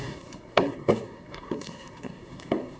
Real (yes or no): no